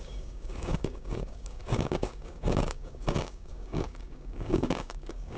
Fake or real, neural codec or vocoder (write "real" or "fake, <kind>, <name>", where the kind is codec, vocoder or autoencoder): fake, codec, DAC